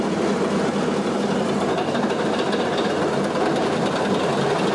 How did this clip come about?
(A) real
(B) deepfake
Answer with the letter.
A